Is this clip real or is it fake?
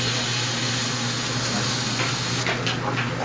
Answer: real